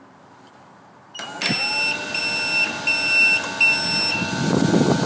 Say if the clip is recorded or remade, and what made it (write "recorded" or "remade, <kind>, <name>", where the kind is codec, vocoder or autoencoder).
recorded